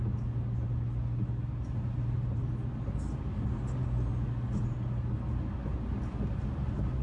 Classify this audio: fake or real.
real